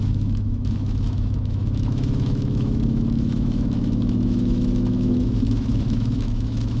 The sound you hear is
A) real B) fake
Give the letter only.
B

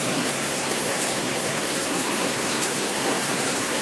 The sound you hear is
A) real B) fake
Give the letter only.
B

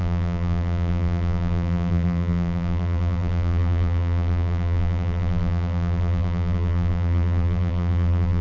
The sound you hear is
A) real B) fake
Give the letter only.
B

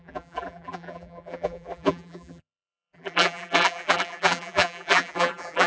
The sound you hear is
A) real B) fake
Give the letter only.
B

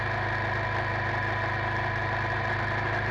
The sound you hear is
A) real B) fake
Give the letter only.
A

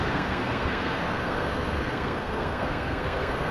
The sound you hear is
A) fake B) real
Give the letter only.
A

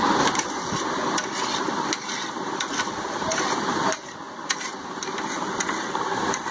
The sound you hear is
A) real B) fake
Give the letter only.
A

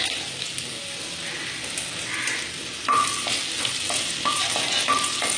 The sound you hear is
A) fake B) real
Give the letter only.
B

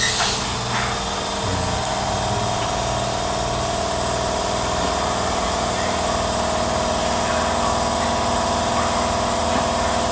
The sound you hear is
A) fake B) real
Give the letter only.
B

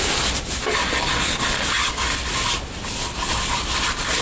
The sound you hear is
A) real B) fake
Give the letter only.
A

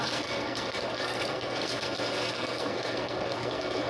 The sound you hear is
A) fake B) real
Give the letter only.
A